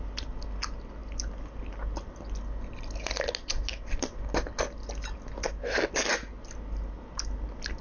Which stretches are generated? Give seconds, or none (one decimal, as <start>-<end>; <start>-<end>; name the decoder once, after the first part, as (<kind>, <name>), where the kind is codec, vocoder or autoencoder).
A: none